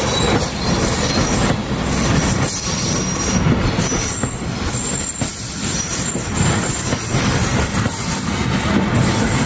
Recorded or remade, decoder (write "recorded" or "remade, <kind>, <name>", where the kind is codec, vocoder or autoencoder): recorded